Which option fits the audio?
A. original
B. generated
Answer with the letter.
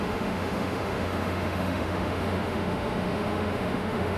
B